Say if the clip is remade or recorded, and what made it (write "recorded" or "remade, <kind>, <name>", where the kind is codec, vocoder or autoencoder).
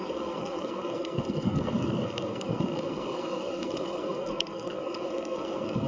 remade, codec, SNAC